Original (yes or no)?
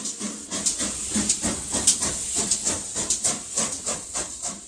yes